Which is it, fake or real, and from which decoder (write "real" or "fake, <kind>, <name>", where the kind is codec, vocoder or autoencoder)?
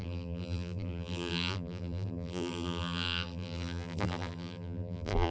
fake, vocoder, BigVGAN v2